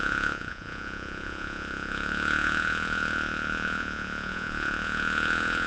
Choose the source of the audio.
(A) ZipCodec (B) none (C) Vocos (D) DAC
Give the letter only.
C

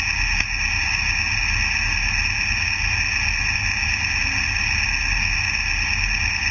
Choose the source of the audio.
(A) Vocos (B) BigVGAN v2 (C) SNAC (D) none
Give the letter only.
D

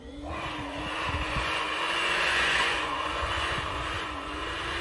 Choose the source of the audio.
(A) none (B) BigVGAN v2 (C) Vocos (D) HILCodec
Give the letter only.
C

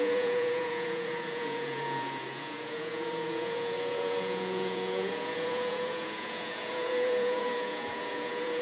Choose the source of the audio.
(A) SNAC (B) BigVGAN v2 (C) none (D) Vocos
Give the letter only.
D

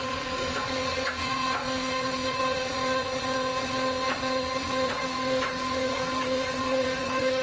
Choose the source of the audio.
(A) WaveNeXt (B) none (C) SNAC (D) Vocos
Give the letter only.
D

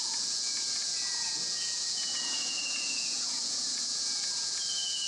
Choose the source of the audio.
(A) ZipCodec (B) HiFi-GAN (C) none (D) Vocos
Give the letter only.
D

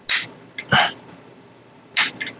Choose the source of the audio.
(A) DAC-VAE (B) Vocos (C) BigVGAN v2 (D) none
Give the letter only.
D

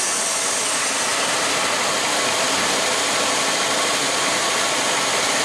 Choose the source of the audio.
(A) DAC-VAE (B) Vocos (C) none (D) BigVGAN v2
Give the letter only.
C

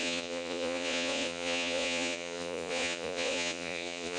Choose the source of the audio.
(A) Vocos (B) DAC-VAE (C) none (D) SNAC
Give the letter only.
A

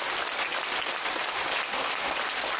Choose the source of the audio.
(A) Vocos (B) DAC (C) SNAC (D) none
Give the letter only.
D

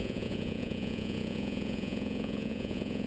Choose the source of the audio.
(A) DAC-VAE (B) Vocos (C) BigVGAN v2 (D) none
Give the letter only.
B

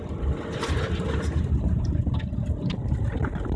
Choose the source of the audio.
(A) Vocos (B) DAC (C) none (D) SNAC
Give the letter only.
C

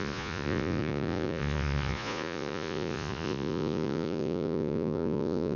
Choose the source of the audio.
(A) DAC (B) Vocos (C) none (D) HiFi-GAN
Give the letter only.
B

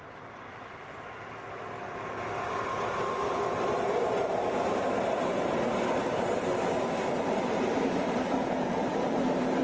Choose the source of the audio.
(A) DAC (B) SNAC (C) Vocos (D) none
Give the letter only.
D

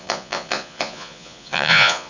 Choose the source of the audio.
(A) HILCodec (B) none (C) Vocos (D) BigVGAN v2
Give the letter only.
C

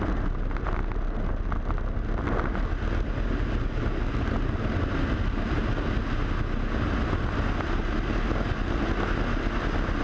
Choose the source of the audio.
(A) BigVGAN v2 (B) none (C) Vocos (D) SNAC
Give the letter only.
B